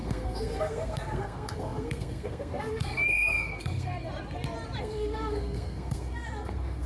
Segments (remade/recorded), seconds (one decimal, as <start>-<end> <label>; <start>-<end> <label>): 0.0-3.9 remade; 3.9-4.8 recorded; 4.8-6.9 remade